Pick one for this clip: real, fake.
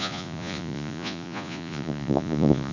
fake